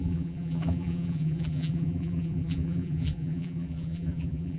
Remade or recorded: remade